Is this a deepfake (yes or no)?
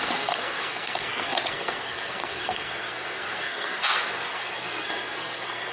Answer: yes